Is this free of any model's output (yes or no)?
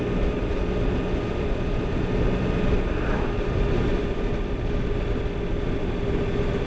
yes